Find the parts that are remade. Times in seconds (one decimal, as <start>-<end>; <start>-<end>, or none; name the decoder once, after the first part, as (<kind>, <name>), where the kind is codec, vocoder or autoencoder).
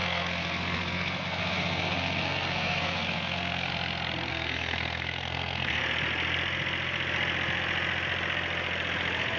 0.0-3.7 (codec, SNAC); 4.3-5.8